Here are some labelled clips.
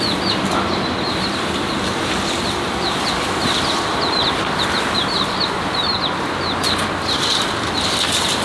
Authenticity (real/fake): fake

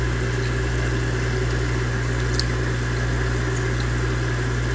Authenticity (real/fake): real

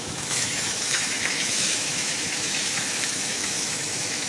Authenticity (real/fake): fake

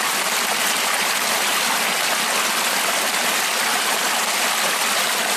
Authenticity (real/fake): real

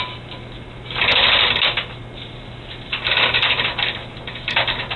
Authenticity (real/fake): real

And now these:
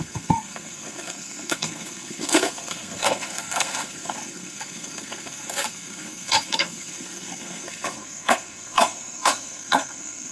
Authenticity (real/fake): fake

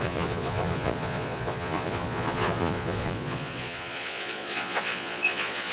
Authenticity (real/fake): fake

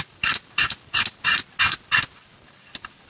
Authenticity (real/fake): real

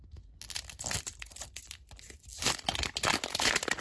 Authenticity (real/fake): real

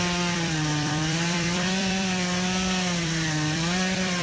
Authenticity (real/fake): fake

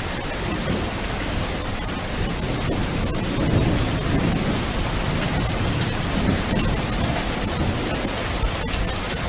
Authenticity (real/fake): real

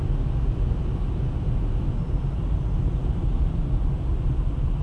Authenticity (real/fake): real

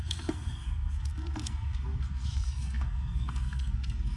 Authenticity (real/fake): fake